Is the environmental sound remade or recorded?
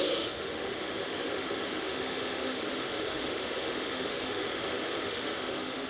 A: remade